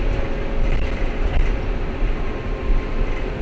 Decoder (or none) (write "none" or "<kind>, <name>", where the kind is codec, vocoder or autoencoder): none